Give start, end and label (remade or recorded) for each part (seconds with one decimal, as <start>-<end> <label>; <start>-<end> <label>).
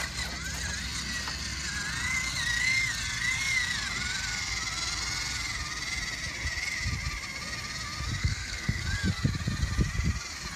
0.0-8.2 recorded; 8.2-8.8 remade; 8.8-10.6 recorded